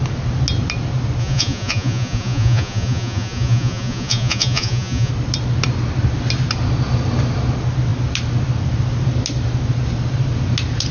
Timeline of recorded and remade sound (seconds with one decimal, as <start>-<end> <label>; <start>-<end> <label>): 0.0-1.2 recorded; 1.2-5.1 remade; 5.1-10.9 recorded